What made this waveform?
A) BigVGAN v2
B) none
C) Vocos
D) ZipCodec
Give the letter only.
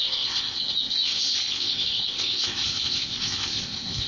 D